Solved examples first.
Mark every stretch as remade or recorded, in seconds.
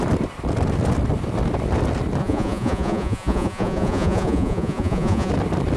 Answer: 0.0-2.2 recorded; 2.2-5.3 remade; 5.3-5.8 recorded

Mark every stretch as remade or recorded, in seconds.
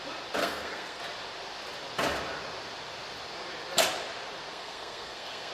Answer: 0.0-0.4 recorded; 0.4-1.0 remade; 1.0-4.5 recorded; 4.5-5.5 remade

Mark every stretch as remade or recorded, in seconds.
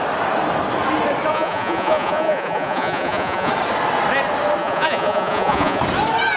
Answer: 0.0-1.3 recorded; 1.3-3.5 remade; 3.5-4.6 recorded; 4.6-5.8 remade; 5.8-6.4 recorded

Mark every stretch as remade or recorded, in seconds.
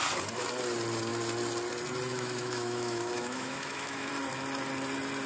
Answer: 0.0-2.1 recorded; 2.1-4.1 remade; 4.1-5.3 recorded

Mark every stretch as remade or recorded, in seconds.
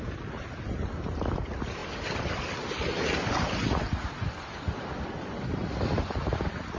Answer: 0.0-6.8 recorded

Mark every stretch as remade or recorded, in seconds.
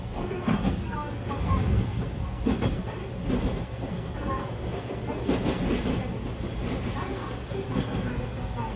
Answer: 0.0-3.0 remade; 3.0-3.6 recorded; 3.6-5.9 remade; 5.9-7.0 recorded; 7.0-8.8 remade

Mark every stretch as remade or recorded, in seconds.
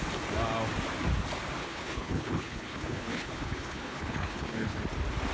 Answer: 0.0-1.6 recorded; 1.6-4.8 remade; 4.8-5.3 recorded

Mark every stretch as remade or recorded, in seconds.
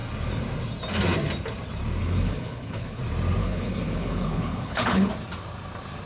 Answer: 0.0-2.0 recorded; 2.0-3.0 remade; 3.0-3.4 recorded; 3.4-5.1 remade; 5.1-6.1 recorded